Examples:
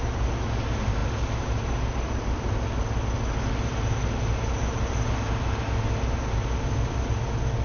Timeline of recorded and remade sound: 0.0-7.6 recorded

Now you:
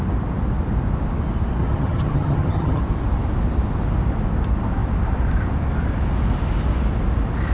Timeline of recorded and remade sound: 0.0-1.6 recorded; 1.6-2.8 remade; 2.8-7.5 recorded